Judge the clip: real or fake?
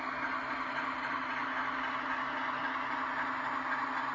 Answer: real